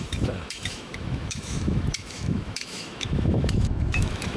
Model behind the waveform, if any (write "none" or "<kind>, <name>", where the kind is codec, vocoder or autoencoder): autoencoder, DAC-VAE